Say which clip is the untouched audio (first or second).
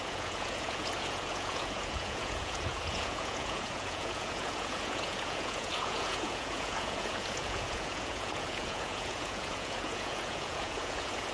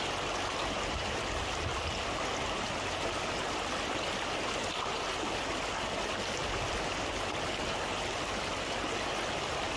second